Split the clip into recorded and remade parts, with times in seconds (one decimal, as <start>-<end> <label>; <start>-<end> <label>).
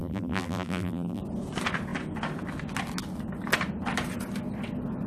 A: 0.0-1.2 remade; 1.2-5.1 recorded